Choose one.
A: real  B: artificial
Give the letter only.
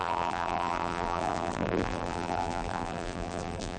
B